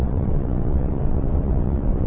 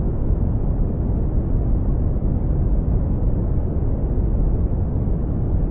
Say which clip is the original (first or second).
second